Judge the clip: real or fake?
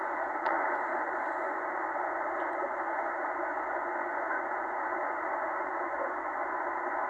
fake